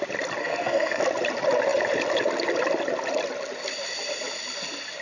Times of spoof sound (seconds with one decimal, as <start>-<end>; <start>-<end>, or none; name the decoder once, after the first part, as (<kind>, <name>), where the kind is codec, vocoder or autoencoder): 0.4-1.0 (codec, SNAC)